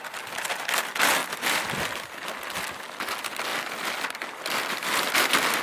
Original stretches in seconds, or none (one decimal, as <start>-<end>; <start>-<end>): 0.0-5.6